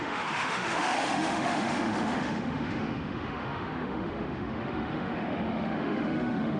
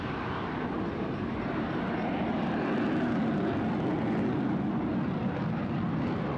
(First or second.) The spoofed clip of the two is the first